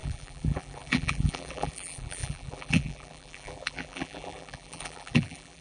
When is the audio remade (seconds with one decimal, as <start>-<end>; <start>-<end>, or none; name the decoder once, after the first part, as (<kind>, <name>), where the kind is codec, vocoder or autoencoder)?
0.0-5.6 (vocoder, BigVGAN v2)

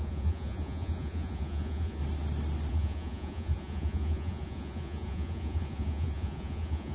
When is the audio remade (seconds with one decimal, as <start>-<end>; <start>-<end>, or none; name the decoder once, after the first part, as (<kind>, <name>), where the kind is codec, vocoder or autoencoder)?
0.0-2.0 (vocoder, Vocos); 2.7-6.9

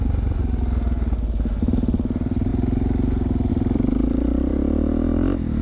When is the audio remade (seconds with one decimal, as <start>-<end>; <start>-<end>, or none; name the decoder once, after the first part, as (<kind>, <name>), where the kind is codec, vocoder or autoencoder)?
0.0-0.4 (vocoder, BigVGAN v2); 1.5-2.5; 3.5-4.5